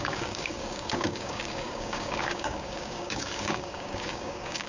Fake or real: fake